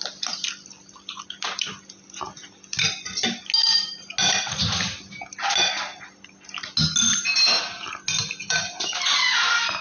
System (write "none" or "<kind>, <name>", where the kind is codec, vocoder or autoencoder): none